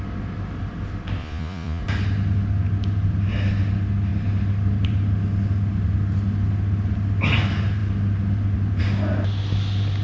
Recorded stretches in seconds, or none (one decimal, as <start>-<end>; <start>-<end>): 0.0-1.2; 1.8-10.0